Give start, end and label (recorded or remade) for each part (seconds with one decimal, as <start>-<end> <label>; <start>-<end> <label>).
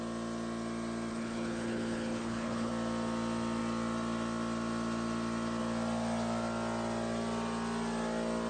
0.0-1.1 recorded; 1.1-2.7 remade; 2.7-8.5 recorded